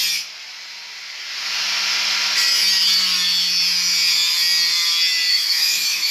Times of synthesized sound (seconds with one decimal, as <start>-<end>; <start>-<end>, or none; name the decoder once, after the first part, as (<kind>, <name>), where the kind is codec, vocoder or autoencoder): 5.3-6.1 (autoencoder, DAC-VAE)